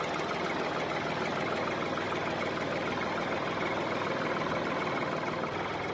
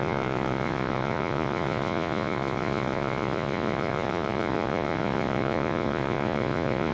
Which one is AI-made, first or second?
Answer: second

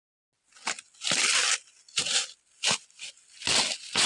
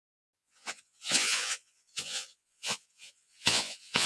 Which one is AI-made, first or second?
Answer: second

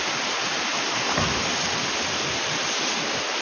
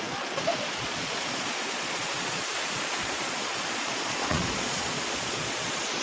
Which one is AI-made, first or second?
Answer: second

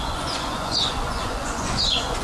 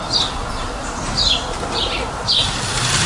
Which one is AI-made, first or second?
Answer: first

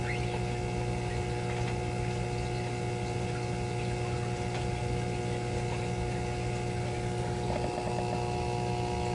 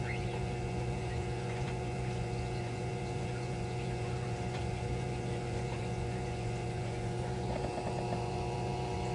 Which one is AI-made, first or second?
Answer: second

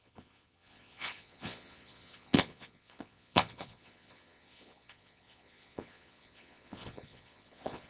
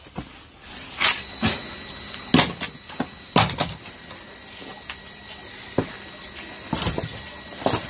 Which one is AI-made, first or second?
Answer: first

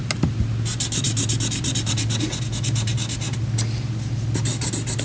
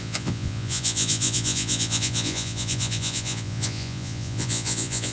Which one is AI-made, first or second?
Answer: second